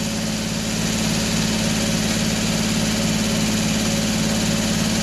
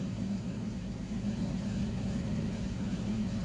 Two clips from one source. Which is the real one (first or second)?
first